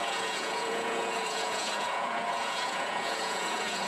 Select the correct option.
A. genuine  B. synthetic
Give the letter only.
B